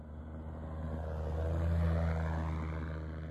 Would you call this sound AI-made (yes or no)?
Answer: no